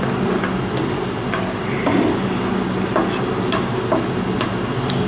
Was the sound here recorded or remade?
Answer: recorded